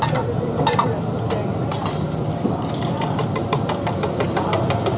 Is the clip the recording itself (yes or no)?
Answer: no